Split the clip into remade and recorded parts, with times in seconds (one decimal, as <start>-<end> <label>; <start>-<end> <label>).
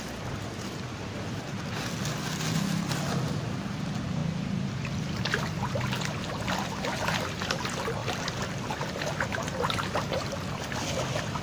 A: 0.0-11.4 recorded